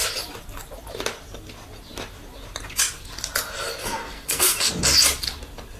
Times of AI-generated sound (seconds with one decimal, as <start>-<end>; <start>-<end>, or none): 3.8-4.7